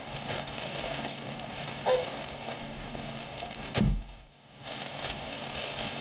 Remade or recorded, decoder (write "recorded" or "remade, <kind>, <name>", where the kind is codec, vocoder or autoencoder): remade, codec, DAC